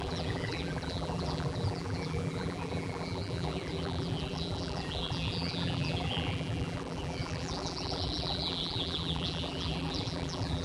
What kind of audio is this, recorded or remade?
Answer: remade